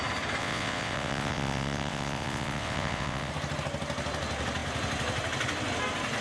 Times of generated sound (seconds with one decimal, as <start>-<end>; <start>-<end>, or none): 0.4-3.3